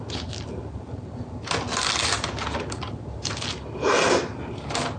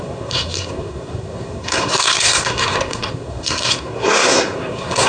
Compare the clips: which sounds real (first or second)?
first